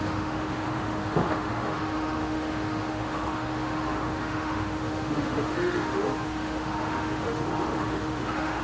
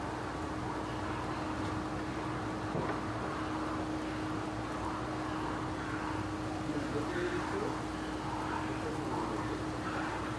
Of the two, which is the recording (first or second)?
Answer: second